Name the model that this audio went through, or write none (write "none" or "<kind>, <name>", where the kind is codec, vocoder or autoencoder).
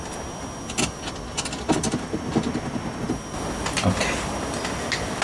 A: none